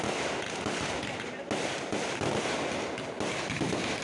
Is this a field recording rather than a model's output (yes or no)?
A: yes